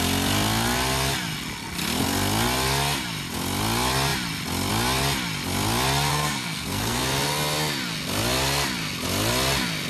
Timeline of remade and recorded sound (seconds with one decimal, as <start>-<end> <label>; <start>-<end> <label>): 0.0-6.1 recorded; 6.1-7.0 remade; 7.0-9.9 recorded